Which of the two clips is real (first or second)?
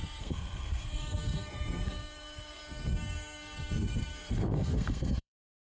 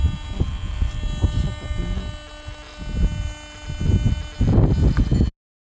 second